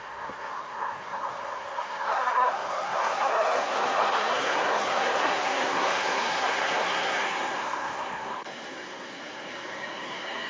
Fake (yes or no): yes